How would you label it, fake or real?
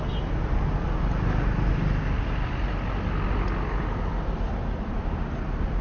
real